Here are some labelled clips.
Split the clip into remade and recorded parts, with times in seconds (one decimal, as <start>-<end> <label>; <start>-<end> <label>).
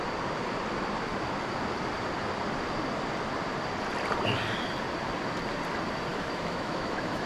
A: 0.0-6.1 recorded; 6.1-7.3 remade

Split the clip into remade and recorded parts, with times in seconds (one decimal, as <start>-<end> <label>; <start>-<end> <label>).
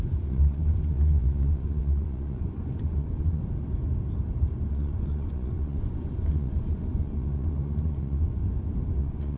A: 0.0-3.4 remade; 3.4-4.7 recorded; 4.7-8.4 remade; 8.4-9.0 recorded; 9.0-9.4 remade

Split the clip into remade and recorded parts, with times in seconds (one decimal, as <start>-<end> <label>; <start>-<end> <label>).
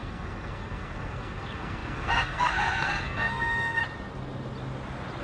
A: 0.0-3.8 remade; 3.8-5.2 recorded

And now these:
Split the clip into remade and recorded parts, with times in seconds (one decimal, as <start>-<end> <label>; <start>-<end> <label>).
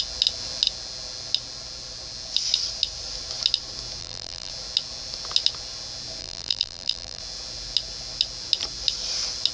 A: 0.0-4.0 recorded; 4.0-4.5 remade; 4.5-6.2 recorded; 6.2-7.2 remade; 7.2-9.5 recorded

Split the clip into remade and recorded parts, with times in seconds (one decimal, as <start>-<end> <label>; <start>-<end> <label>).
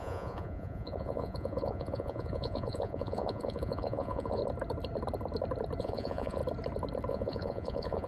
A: 0.0-4.4 remade; 4.4-5.8 recorded; 5.8-6.4 remade; 6.4-7.1 recorded; 7.1-8.1 remade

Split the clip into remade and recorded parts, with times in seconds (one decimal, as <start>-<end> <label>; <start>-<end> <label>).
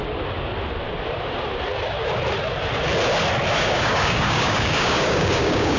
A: 0.0-3.5 recorded; 3.5-5.8 remade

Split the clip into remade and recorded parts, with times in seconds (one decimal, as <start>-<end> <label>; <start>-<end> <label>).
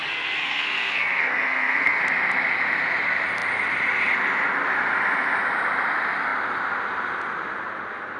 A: 0.0-2.0 remade; 2.0-8.2 recorded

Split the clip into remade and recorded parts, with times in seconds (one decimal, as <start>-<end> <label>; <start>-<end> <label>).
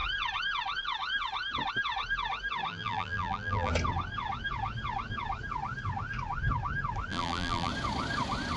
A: 0.0-2.7 recorded; 2.7-3.7 remade; 3.7-7.1 recorded; 7.1-7.7 remade; 7.7-8.6 recorded